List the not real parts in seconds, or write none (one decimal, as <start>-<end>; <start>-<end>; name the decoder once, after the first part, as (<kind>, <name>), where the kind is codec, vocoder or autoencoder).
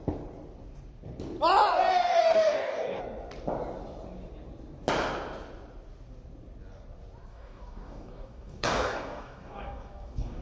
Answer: 1.9-3.0 (codec, DAC); 7.3-10.4